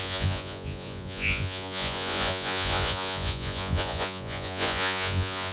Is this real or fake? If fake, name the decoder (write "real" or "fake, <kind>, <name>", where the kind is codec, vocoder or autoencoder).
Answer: fake, vocoder, Vocos